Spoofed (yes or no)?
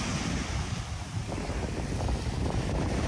no